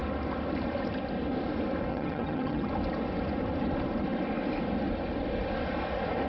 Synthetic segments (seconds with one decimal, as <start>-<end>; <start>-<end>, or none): 1.9-2.7